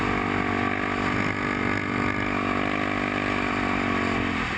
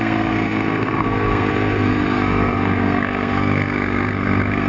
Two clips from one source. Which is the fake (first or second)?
second